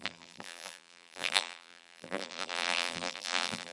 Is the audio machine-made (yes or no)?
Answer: yes